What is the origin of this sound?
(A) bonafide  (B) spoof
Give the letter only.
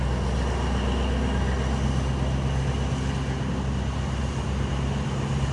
A